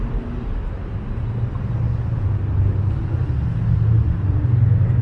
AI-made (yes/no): no